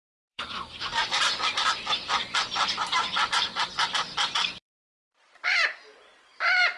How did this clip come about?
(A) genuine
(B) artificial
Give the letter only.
B